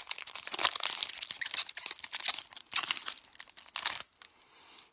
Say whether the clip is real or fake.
real